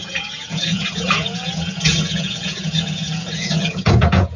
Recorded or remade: remade